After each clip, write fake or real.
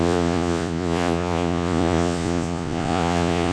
fake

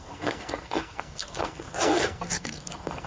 fake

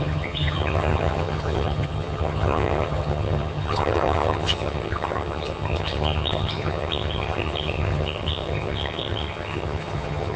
fake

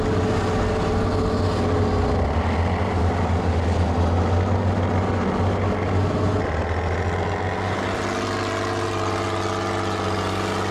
real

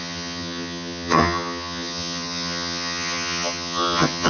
fake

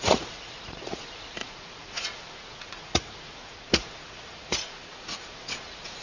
fake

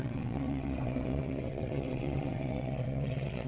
fake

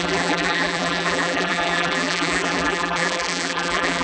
fake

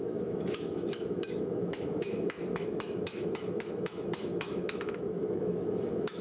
fake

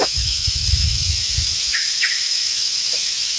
fake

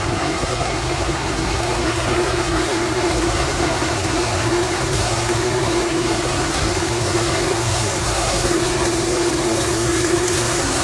fake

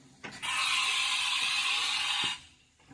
real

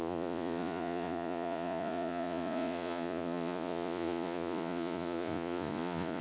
fake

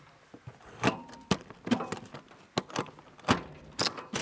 real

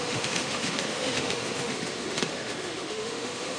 fake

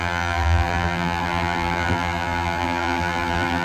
fake